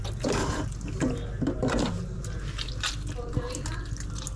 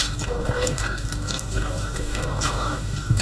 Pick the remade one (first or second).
second